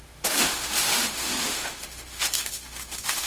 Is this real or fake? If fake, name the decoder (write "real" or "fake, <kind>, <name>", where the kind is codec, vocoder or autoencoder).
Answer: fake, autoencoder, DAC-VAE